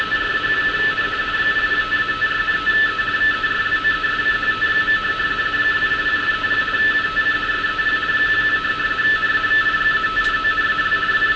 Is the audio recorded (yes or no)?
yes